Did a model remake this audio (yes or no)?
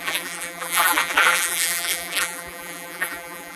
yes